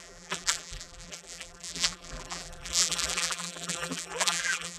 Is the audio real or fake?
fake